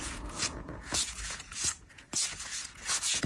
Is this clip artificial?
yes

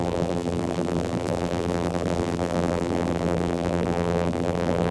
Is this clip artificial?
yes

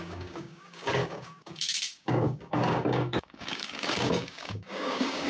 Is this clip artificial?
yes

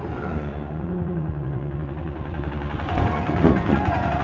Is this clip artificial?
yes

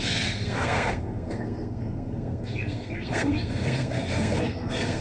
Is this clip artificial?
yes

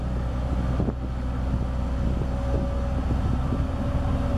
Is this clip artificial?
no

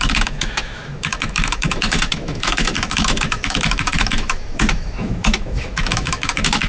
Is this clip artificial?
yes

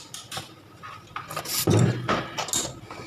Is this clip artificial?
no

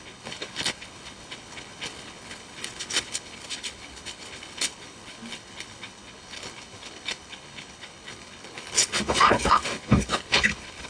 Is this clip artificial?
yes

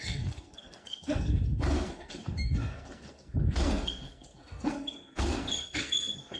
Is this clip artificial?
yes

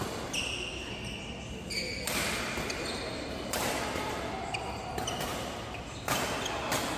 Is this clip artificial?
no